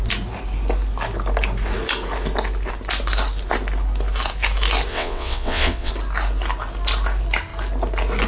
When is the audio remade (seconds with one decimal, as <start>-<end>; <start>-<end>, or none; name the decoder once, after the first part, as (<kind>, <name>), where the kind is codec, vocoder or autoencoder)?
4.9-5.9 (vocoder, WaveNeXt)